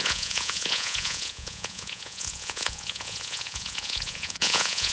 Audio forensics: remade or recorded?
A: remade